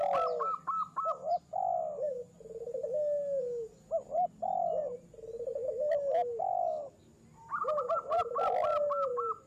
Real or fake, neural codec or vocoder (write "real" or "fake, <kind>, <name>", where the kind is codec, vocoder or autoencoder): real